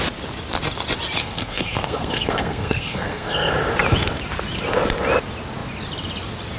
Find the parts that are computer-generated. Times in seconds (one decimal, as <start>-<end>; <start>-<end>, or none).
1.2-3.5

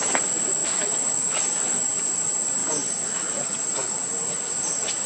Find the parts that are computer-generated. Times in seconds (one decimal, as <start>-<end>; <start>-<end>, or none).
none

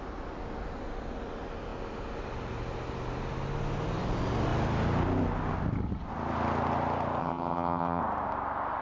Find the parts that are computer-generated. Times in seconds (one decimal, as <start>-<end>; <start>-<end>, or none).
7.2-8.0

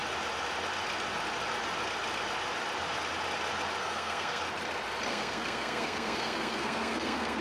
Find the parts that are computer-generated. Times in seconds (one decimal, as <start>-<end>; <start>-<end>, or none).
3.8-4.4; 5.1-7.4

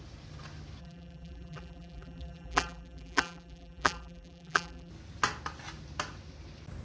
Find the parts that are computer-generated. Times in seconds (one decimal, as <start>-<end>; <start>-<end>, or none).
0.8-4.9

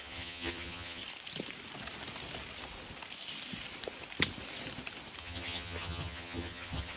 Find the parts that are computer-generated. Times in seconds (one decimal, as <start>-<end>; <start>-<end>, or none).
0.0-1.0; 5.2-7.0

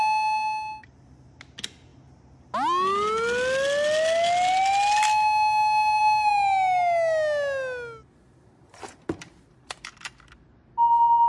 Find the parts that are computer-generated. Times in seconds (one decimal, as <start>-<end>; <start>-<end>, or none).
none